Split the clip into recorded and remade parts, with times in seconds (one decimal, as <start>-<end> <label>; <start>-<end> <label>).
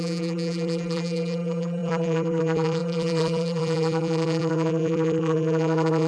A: 0.0-6.1 remade